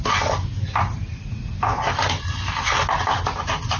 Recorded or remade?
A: recorded